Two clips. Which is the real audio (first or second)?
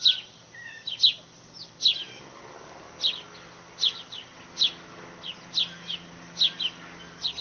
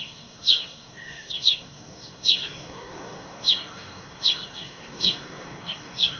first